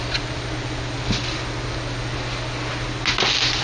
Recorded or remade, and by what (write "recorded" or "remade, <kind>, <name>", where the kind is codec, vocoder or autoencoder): recorded